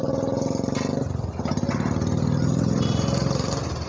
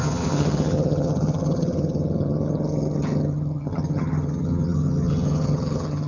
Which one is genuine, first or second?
first